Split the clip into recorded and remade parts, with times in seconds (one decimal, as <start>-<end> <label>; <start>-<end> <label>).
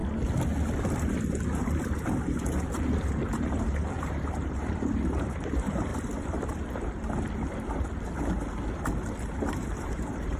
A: 0.0-3.0 recorded; 3.0-5.9 remade; 5.9-9.5 recorded; 9.5-10.4 remade